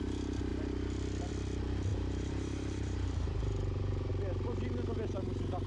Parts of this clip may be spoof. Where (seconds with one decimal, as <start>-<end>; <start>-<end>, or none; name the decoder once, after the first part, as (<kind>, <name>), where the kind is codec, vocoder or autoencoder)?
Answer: 1.9-4.1 (vocoder, BigVGAN v2)